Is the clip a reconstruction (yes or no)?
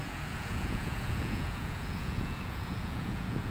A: yes